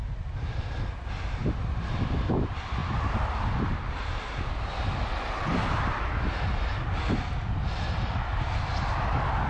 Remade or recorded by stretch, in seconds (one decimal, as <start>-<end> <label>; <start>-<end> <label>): 0.0-9.5 recorded